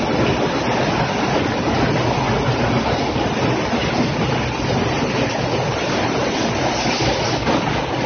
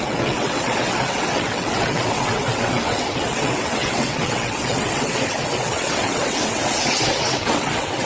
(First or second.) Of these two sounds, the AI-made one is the second